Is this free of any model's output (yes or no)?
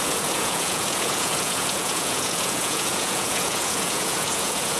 no